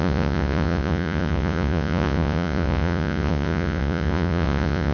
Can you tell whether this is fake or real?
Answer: fake